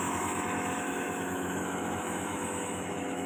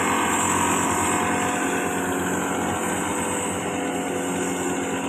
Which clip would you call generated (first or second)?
first